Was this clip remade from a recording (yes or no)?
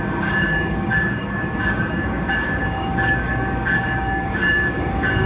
yes